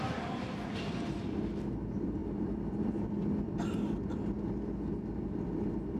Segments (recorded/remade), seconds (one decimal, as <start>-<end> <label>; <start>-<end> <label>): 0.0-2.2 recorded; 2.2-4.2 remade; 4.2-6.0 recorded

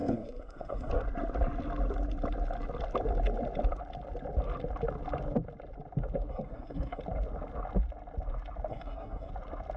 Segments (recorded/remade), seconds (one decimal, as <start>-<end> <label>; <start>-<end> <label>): 0.0-0.9 remade; 0.9-6.3 recorded; 6.3-7.0 remade; 7.0-8.7 recorded; 8.7-9.3 remade; 9.3-9.8 recorded

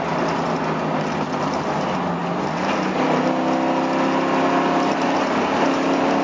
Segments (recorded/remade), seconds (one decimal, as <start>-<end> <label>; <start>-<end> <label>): 0.0-6.2 recorded